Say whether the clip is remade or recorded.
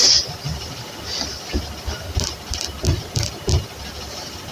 recorded